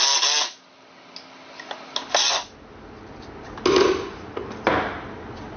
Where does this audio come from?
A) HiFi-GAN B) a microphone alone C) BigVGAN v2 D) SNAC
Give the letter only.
B